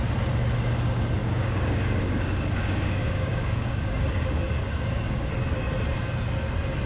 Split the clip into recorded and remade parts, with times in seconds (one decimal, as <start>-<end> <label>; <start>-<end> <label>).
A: 0.0-1.2 recorded; 1.2-5.3 remade; 5.3-6.9 recorded